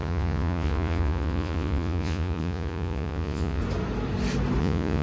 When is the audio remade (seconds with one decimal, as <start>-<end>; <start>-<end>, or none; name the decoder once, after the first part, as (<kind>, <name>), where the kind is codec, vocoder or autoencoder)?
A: 0.0-3.6 (vocoder, Vocos); 4.6-5.0